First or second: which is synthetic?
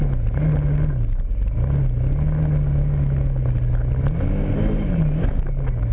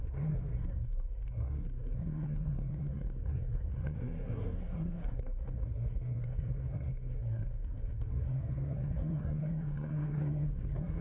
second